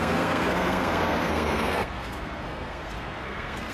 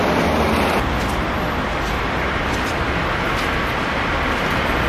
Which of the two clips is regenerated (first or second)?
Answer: first